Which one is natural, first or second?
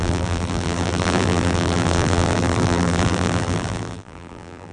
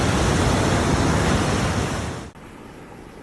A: second